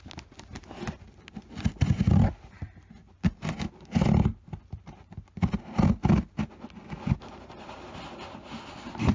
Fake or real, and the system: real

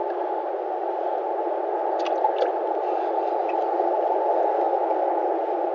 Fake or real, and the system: real